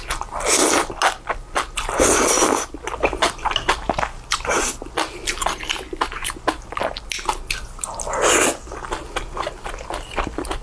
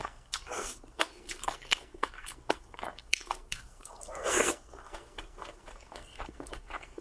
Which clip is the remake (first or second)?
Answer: second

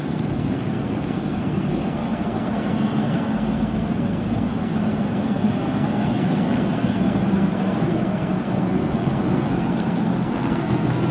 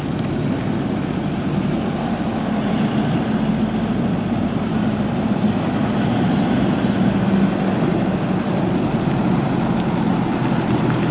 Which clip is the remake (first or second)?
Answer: first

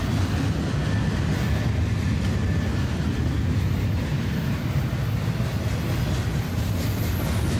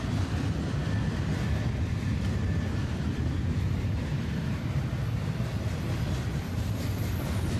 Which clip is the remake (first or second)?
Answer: second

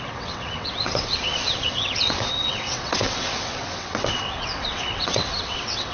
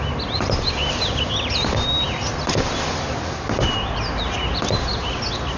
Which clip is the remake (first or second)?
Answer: first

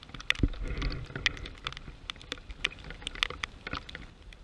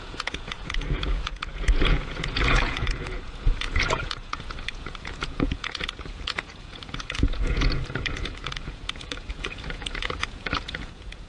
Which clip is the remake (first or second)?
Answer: second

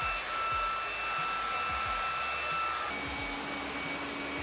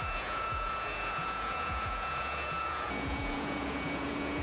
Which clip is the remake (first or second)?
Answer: second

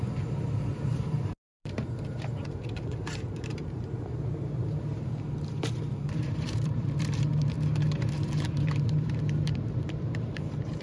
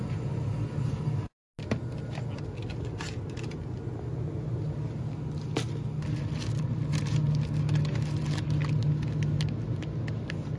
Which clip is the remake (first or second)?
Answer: first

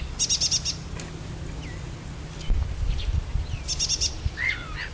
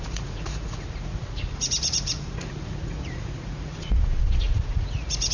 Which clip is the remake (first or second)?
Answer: second